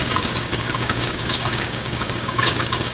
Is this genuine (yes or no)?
no